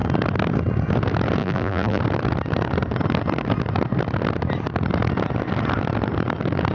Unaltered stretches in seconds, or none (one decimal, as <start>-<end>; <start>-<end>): 0.0-1.4; 2.0-6.7